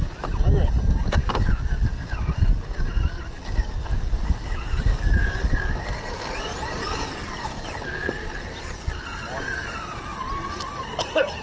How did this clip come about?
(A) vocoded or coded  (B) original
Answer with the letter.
B